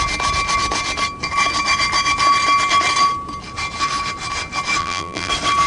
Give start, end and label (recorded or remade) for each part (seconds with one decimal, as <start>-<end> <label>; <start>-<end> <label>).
0.0-4.8 recorded; 4.8-5.3 remade; 5.3-5.7 recorded